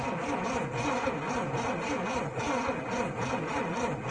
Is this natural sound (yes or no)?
yes